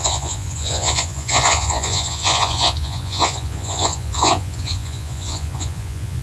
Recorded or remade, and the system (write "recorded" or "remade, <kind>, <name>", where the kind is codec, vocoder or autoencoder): remade, vocoder, Vocos